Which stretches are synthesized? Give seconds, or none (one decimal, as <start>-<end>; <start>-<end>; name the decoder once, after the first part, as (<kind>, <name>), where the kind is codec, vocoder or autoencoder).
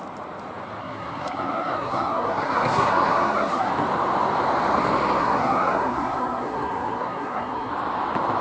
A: 0.8-3.7 (codec, SNAC); 5.2-7.7